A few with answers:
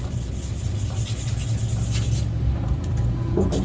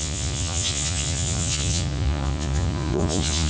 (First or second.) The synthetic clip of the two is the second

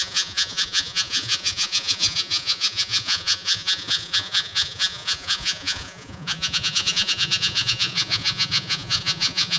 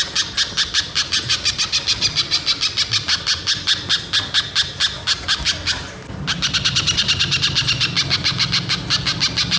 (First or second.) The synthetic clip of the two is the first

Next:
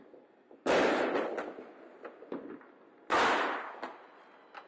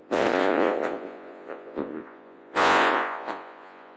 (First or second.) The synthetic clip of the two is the second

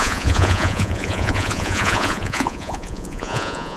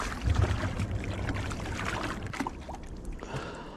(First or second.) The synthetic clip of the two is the first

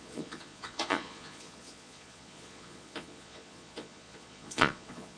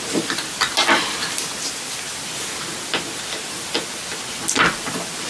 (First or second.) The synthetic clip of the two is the first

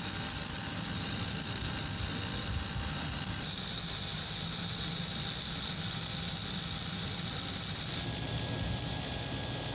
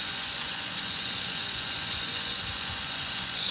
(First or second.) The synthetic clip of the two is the second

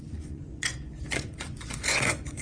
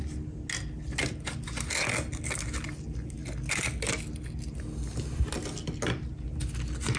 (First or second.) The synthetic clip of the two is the first